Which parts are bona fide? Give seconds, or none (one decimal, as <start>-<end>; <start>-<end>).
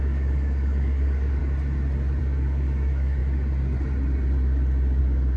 1.4-2.2; 3.2-5.0